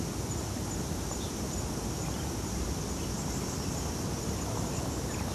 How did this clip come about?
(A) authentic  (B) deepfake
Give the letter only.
A